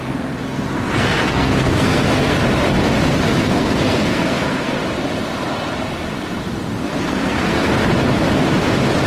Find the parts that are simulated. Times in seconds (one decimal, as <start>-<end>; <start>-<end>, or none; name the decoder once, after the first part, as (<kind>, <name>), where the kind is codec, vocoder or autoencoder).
0.0-2.4 (codec, SNAC); 3.1-4.8; 6.8-7.7